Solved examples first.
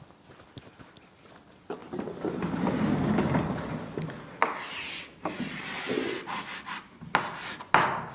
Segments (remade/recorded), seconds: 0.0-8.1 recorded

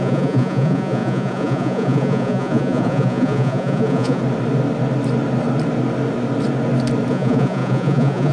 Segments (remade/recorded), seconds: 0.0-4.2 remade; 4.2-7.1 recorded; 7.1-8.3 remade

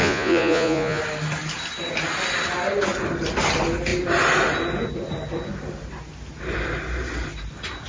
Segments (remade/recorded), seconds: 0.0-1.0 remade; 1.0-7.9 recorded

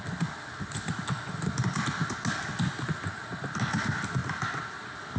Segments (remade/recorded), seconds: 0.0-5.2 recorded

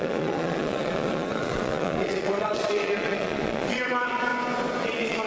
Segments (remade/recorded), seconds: 0.0-4.3 remade; 4.3-4.8 recorded; 4.8-5.3 remade

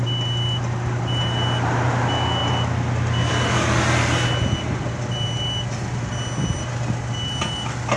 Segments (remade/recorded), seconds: 0.0-8.0 recorded